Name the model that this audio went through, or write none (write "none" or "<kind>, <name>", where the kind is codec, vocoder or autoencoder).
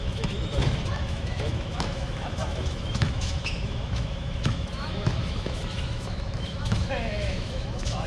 autoencoder, DAC-VAE